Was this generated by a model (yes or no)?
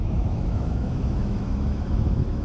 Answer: yes